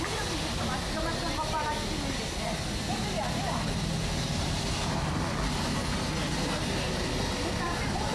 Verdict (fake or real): real